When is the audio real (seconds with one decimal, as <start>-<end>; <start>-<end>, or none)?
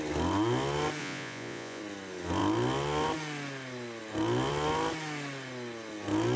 0.0-1.0; 1.8-6.4